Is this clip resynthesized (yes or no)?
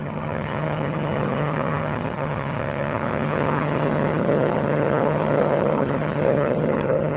yes